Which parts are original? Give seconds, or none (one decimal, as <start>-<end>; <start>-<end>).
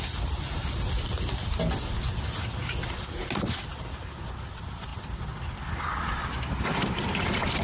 0.0-7.6